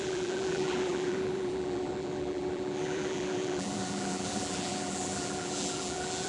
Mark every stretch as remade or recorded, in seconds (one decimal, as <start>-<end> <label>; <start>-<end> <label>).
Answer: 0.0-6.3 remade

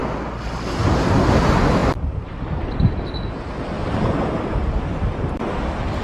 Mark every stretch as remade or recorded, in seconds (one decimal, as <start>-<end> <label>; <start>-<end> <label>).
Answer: 0.0-1.8 recorded; 1.8-5.4 remade; 5.4-6.0 recorded

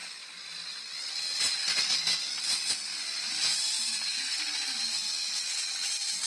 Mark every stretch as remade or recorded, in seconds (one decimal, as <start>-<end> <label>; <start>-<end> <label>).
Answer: 0.0-6.3 recorded